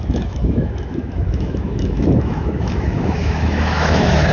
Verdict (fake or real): fake